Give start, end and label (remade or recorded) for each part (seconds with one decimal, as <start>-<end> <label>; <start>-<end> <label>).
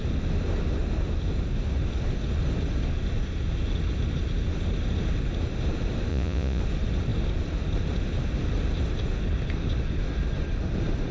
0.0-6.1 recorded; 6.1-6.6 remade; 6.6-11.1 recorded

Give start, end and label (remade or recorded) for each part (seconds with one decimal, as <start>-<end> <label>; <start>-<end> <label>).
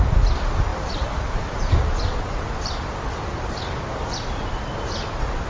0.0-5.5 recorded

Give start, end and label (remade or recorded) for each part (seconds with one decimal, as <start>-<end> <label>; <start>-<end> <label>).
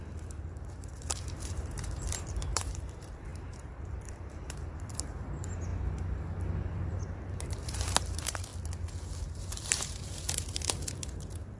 0.0-5.7 remade; 5.7-6.9 recorded; 6.9-8.5 remade; 8.5-9.2 recorded; 9.2-11.6 remade